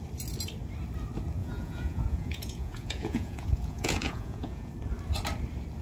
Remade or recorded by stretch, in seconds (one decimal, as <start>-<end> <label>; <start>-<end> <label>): 0.0-1.4 recorded; 1.4-4.7 remade; 4.7-5.8 recorded